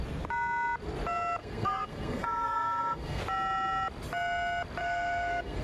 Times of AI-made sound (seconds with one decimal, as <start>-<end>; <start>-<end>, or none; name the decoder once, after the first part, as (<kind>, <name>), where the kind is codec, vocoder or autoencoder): 1.4-3.2 (codec, SNAC); 4.8-5.6